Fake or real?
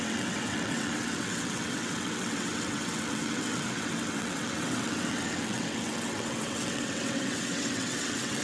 fake